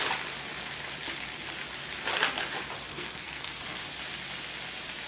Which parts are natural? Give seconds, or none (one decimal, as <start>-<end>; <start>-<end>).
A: 0.0-2.9; 3.8-5.1